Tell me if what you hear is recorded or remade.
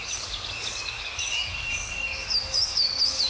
remade